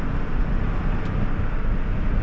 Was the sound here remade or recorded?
recorded